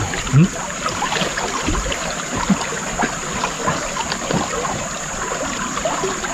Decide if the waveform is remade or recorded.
recorded